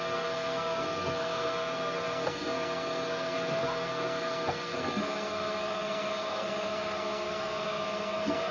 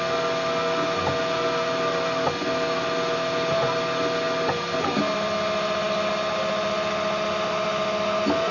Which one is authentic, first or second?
second